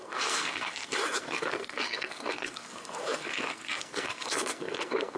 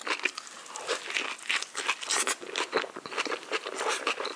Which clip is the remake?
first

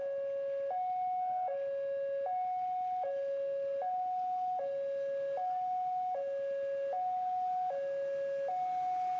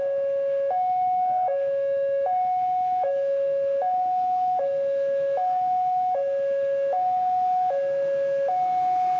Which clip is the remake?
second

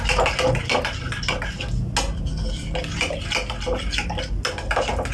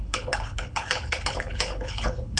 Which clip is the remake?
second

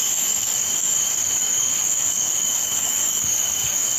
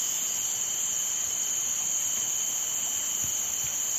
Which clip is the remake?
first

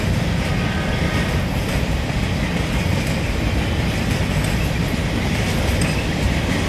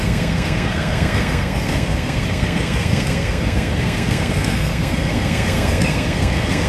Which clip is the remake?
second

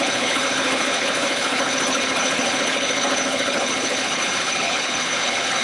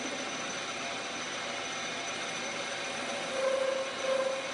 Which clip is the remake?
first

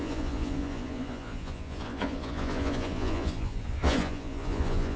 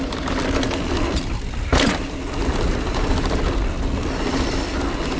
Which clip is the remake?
first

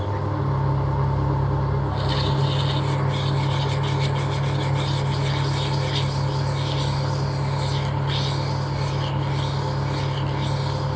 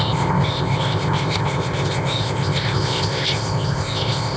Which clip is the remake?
second